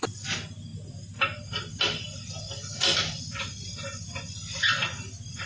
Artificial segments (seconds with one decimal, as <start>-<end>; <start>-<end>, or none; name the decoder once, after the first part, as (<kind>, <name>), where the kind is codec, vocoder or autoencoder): none